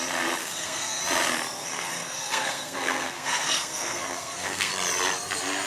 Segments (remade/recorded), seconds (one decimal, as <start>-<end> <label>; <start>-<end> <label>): 0.0-0.4 recorded; 0.4-1.0 remade; 1.0-1.6 recorded; 1.6-4.7 remade; 4.7-5.7 recorded